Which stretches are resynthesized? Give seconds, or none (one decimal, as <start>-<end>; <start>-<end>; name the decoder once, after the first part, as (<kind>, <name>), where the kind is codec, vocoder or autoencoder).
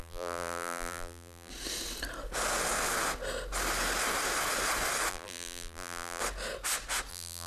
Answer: 0.0-1.5 (vocoder, BigVGAN v2); 5.1-6.2; 7.1-7.5